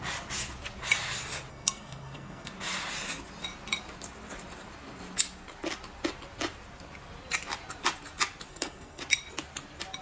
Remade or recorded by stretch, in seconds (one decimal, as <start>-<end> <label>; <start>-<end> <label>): 0.0-1.5 recorded; 1.5-2.5 remade; 2.5-8.5 recorded; 8.5-9.0 remade; 9.0-10.0 recorded